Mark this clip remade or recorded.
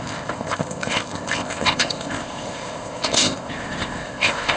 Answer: remade